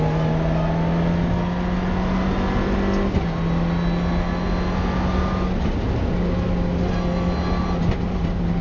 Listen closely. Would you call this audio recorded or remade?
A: recorded